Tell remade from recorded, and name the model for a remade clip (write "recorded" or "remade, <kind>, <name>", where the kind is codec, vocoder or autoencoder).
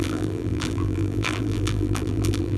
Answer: remade, vocoder, BigVGAN v2